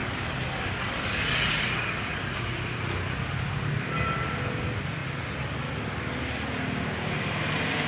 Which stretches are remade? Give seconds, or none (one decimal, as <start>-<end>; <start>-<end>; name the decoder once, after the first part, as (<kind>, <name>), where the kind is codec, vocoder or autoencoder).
0.0-1.5 (codec, DAC)